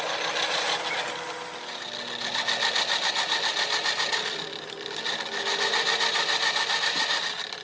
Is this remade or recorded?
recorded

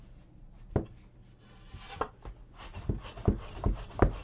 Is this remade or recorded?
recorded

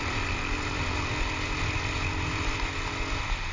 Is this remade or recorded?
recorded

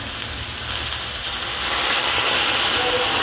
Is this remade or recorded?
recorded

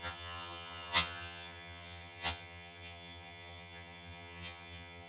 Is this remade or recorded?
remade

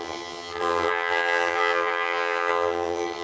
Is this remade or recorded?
remade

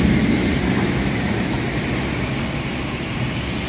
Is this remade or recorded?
recorded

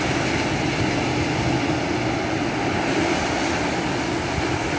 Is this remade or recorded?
recorded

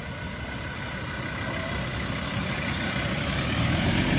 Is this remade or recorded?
recorded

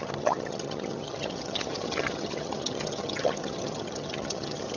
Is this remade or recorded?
remade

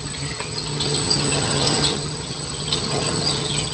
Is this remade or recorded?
remade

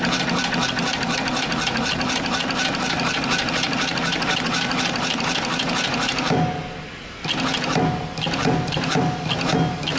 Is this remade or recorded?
recorded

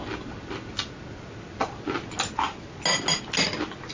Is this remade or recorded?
recorded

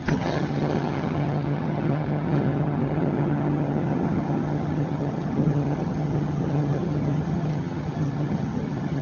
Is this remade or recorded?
remade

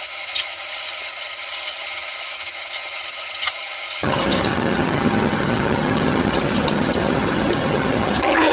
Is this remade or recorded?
remade